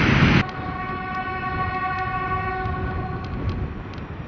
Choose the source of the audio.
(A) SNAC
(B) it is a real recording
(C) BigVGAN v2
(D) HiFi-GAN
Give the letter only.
B